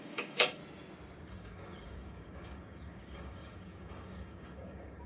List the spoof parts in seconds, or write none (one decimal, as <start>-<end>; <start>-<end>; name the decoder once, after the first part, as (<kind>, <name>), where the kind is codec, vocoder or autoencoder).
0.0-0.6 (codec, DAC); 1.3-5.1

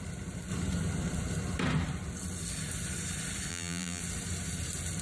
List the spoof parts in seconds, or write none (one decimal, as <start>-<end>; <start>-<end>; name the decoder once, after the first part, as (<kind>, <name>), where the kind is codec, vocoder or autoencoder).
3.5-4.0 (vocoder, BigVGAN v2)

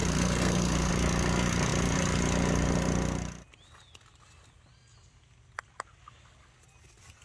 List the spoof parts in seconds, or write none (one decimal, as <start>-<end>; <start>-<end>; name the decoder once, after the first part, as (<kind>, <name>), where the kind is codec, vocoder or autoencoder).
0.0-0.9 (codec, SNAC)

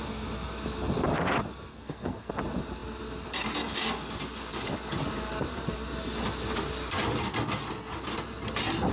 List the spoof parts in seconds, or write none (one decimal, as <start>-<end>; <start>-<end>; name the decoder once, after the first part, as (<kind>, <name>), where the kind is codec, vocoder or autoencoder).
1.7-2.3 (codec, SNAC)